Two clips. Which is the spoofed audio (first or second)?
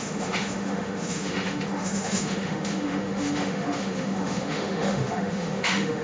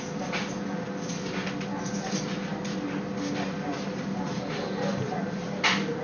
first